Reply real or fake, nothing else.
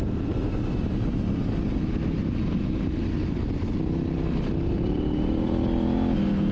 real